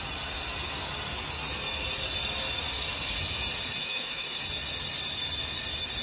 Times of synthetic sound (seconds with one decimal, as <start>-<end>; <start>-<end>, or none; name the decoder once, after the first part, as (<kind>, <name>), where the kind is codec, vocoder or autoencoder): 3.8-4.4 (autoencoder, DAC-VAE)